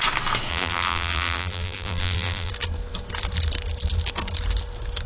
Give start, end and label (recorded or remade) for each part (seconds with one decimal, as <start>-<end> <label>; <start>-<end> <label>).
0.0-0.5 recorded; 0.5-2.5 remade; 2.5-5.1 recorded